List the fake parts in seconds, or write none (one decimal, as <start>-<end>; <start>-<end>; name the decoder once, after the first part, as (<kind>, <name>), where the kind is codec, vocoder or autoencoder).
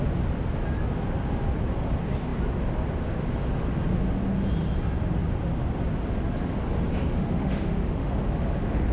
6.9-8.1 (autoencoder, DAC-VAE)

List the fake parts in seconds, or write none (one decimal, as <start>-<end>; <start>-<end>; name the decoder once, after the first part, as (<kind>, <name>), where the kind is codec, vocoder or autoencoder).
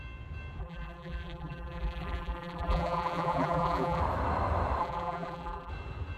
0.6-4.0 (vocoder, BigVGAN v2); 4.8-5.7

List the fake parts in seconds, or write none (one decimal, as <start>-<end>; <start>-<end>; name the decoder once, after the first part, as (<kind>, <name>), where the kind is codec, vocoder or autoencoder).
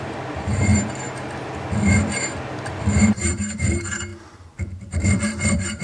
0.0-0.7 (vocoder, BigVGAN v2); 3.0-5.8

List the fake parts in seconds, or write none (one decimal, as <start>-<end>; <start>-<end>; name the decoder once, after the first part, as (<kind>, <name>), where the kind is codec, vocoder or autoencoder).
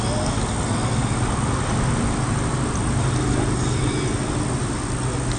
none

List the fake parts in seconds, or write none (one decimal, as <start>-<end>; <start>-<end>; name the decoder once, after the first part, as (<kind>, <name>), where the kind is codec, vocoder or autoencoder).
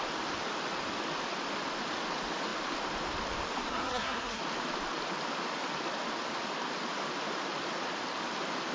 3.7-4.4 (codec, SNAC)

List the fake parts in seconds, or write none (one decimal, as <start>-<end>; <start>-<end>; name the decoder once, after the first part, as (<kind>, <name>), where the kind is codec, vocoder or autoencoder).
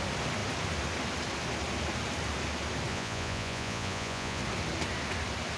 2.9-4.4 (vocoder, Vocos)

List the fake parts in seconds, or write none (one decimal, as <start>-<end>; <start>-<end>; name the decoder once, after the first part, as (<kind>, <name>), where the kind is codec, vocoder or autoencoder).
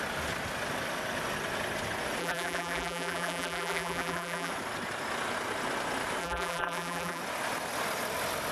2.2-4.5 (vocoder, BigVGAN v2); 6.2-7.2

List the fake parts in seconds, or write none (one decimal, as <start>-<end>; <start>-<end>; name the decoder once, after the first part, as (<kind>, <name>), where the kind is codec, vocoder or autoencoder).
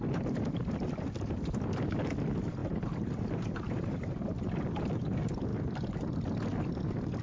2.6-4.1 (vocoder, BigVGAN v2)